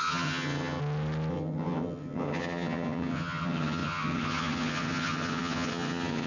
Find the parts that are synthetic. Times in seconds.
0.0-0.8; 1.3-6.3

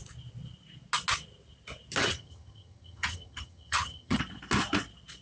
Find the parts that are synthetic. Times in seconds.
2.0-4.2

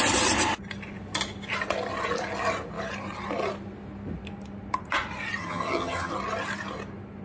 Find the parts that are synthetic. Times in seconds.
5.4-6.1